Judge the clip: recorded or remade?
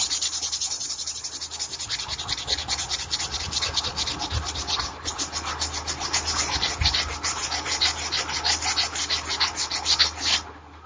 recorded